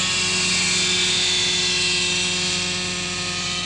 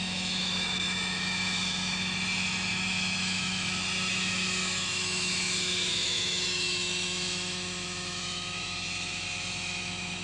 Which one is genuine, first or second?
first